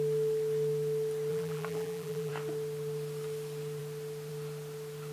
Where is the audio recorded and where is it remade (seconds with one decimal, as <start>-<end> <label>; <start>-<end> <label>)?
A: 0.0-1.3 recorded; 1.3-2.3 remade; 2.3-5.1 recorded